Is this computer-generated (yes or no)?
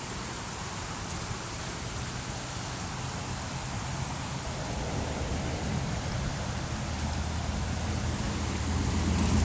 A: no